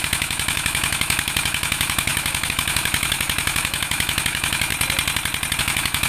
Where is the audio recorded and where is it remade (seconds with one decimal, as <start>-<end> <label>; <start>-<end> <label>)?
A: 0.0-4.7 remade; 4.7-5.6 recorded; 5.6-6.1 remade